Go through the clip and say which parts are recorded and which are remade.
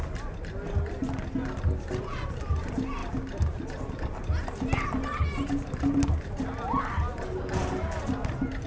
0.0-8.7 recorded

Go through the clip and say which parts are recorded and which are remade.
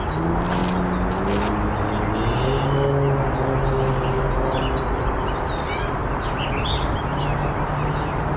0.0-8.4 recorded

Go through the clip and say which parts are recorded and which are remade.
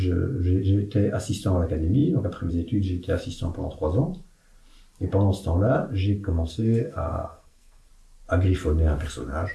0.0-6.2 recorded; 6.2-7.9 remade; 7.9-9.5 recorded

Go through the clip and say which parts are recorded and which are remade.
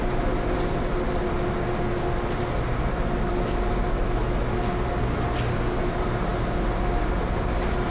0.0-7.9 recorded